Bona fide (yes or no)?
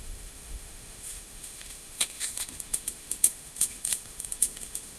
no